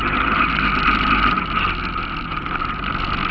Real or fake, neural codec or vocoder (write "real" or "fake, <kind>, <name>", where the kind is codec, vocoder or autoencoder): real